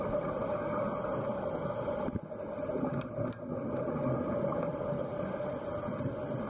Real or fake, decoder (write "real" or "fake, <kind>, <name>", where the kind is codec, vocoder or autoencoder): real